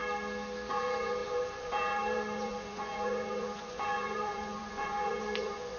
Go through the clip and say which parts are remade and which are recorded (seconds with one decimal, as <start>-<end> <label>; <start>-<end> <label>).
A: 0.0-0.7 recorded; 0.7-5.8 remade